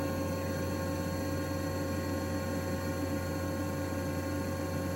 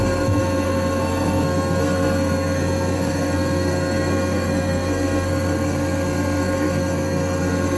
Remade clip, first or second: second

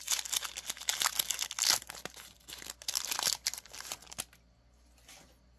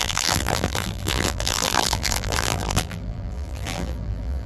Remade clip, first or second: second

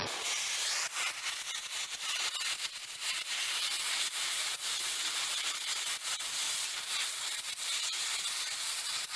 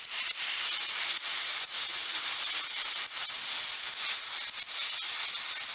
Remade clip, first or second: first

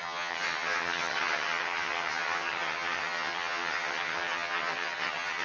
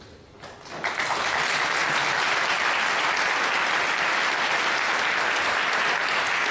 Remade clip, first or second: first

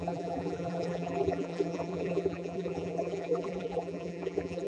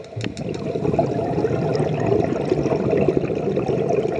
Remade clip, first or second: first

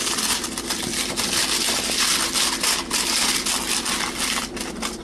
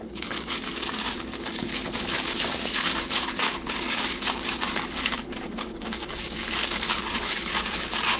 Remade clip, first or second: second